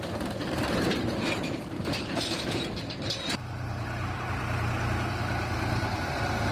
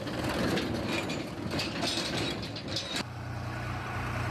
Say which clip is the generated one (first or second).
first